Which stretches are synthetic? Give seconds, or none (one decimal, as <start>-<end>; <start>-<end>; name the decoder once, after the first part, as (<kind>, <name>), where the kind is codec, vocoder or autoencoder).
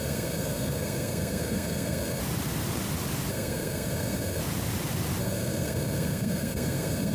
0.0-2.2 (codec, SNAC); 3.3-4.4; 5.2-7.1